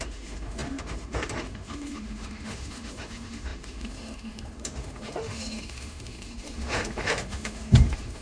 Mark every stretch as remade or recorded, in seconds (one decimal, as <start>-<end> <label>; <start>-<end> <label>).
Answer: 0.0-8.2 remade

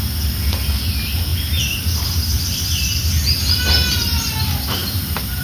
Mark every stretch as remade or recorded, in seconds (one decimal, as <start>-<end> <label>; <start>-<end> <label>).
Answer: 0.0-5.4 recorded

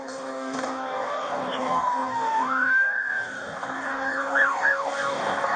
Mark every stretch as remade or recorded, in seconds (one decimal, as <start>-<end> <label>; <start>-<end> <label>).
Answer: 0.0-5.6 remade